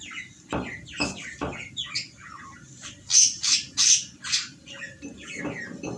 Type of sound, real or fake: real